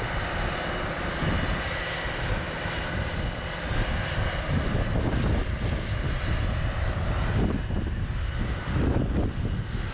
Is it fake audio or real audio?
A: real